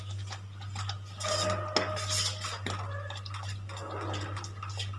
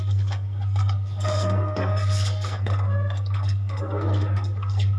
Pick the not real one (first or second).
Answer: second